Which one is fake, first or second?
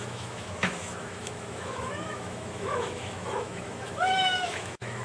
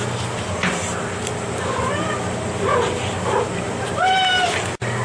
first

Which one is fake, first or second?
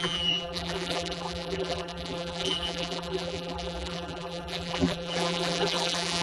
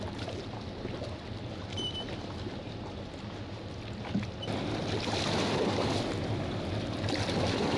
first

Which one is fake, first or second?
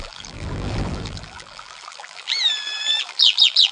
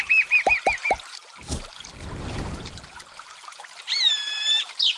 first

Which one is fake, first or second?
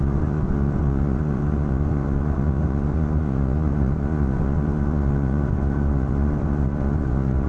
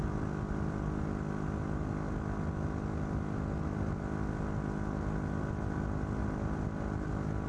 first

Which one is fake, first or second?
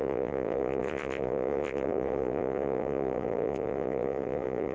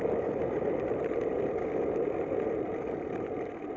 first